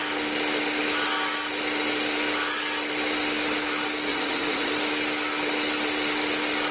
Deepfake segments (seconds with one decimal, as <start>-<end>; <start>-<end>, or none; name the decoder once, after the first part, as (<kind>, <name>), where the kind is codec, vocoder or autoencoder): 4.1-4.7 (vocoder, Vocos)